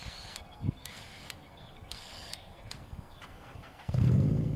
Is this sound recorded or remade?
remade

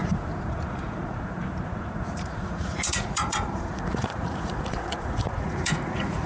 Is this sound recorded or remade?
remade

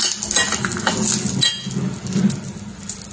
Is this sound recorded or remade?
recorded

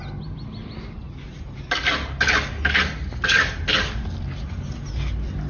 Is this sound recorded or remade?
recorded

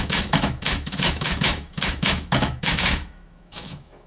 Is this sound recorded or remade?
remade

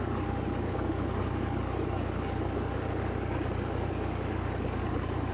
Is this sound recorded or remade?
remade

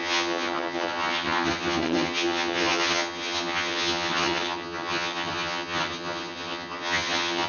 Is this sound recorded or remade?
remade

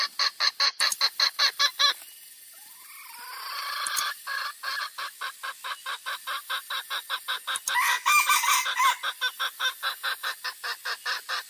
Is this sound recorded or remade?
recorded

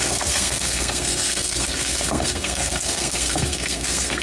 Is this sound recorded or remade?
remade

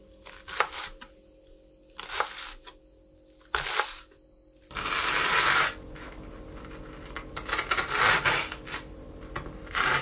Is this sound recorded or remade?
recorded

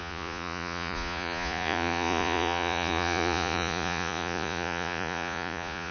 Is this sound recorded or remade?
remade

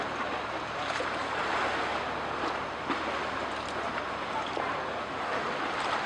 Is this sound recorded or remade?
recorded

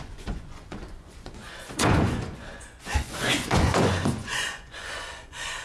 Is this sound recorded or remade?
remade